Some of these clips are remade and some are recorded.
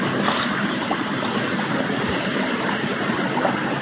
remade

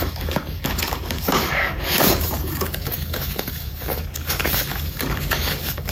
remade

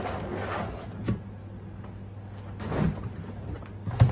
recorded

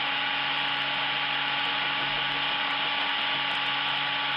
recorded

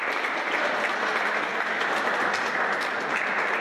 recorded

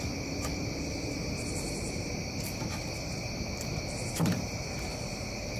remade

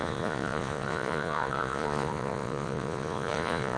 remade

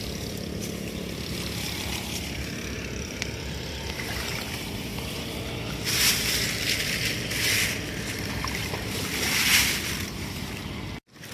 remade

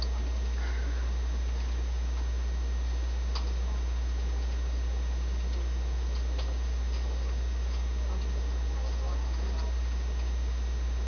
recorded